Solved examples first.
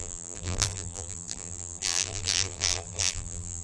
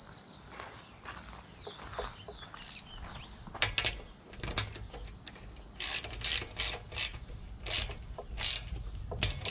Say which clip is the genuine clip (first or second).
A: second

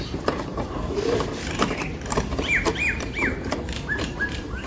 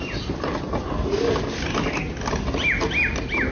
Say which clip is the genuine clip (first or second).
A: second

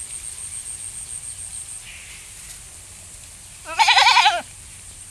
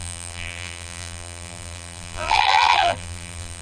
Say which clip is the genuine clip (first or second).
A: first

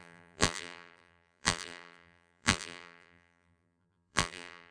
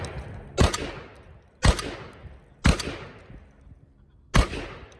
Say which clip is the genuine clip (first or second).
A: second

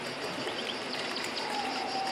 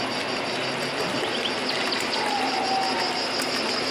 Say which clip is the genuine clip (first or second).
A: second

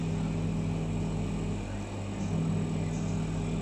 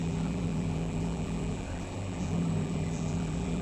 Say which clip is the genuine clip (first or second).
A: first